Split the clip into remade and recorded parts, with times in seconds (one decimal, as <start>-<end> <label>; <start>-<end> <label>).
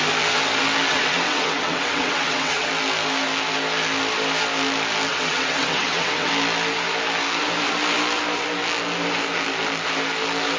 0.0-0.9 recorded; 0.9-2.7 remade; 2.7-5.1 recorded; 5.1-6.3 remade; 6.3-10.6 recorded